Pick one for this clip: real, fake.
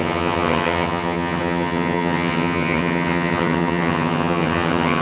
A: fake